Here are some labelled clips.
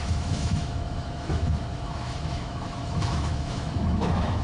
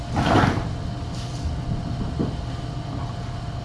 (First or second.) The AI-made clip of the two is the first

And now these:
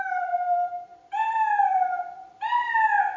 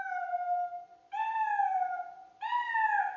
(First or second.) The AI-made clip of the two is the first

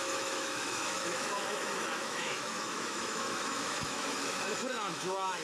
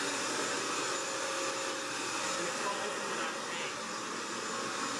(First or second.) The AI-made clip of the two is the first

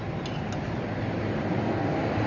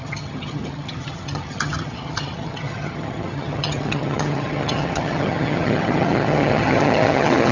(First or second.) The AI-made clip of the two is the second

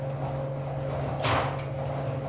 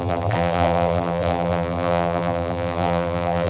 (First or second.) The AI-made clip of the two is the second